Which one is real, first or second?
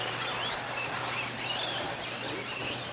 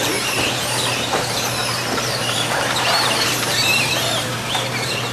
first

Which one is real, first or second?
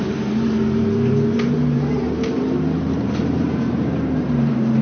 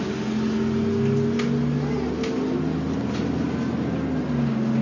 second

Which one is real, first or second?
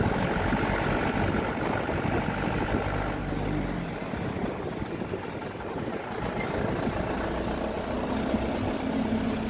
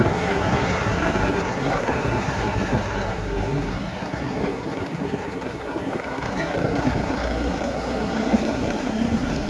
first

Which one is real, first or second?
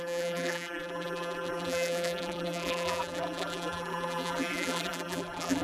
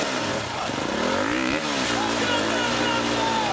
second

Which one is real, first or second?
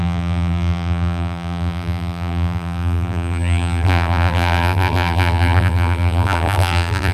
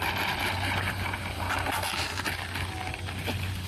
second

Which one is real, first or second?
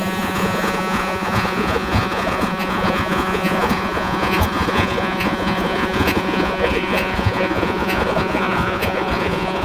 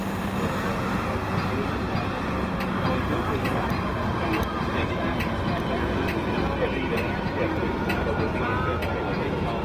second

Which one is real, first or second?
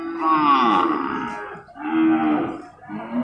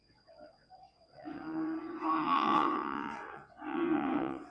first